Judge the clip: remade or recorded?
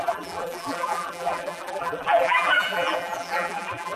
remade